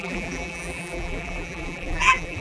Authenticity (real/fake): fake